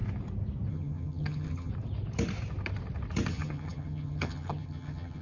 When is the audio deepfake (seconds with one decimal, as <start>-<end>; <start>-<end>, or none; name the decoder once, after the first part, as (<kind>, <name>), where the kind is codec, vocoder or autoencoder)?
0.7-1.7 (vocoder, HiFi-GAN); 3.3-5.2